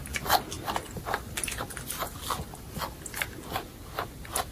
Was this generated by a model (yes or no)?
no